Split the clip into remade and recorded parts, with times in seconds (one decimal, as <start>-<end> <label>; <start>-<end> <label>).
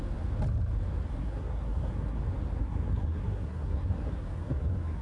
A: 0.0-1.1 recorded; 1.1-2.2 remade; 2.2-2.6 recorded; 2.6-5.0 remade